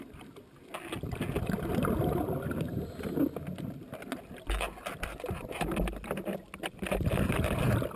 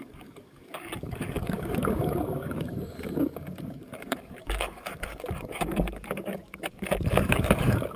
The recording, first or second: first